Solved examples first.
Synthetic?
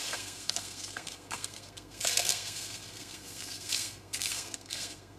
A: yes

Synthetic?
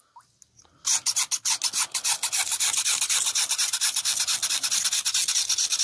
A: no